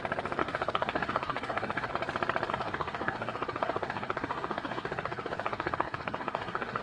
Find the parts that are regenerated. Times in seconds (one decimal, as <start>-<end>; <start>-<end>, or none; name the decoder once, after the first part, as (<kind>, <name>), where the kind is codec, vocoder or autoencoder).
0.4-1.9 (codec, SNAC); 2.5-6.8